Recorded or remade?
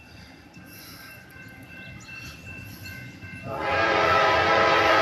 remade